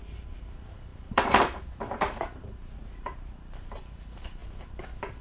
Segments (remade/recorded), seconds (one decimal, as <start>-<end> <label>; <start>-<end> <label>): 0.0-4.4 remade; 4.4-5.2 recorded